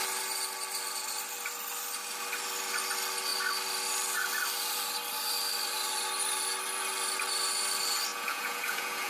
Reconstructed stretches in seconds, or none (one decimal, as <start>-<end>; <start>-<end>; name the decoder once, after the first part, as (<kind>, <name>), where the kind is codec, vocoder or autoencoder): 8.1-9.1 (vocoder, Vocos)